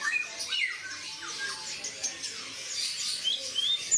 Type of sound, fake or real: real